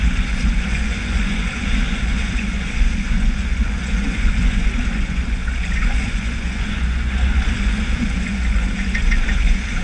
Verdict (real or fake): fake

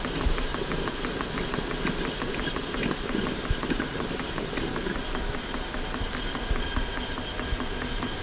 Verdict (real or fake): real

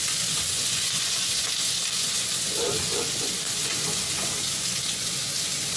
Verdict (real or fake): fake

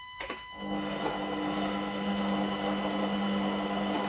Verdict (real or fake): real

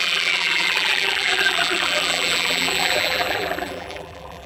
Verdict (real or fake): fake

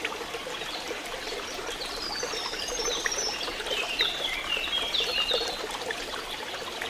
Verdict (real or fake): real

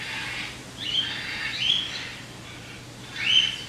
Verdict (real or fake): real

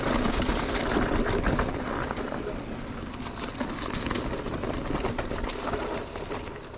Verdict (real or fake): real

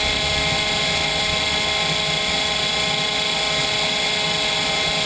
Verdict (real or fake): real